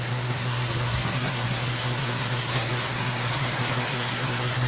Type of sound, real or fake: fake